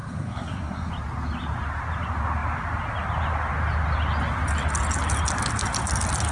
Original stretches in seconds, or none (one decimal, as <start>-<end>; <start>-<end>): 0.9-6.3